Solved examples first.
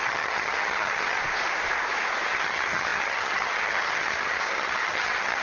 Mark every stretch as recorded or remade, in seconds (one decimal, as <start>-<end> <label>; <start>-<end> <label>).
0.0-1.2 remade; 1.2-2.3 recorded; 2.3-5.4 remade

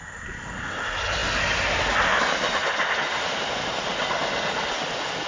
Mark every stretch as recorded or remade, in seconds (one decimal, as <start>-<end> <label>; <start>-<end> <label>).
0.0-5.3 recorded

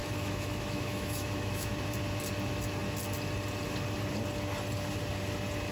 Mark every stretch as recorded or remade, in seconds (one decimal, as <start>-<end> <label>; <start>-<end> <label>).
0.0-1.7 remade; 1.7-5.7 recorded

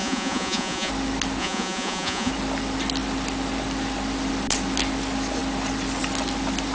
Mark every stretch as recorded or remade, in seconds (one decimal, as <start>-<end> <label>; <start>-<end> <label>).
0.0-0.9 remade; 0.9-1.4 recorded; 1.4-2.3 remade; 2.3-6.7 recorded

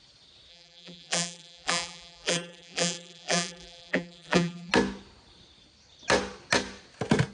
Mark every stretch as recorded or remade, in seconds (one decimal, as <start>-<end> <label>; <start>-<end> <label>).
0.0-0.5 recorded; 0.5-4.7 remade; 4.7-7.3 recorded